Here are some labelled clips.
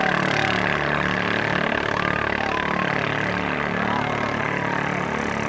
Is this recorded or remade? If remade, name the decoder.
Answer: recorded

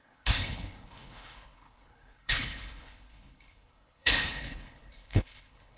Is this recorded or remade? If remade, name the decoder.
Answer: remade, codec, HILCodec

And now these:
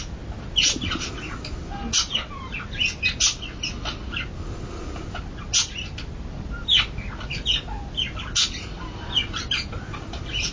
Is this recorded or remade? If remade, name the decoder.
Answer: recorded